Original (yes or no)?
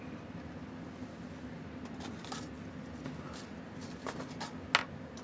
yes